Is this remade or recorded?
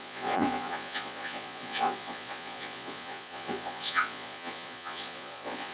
remade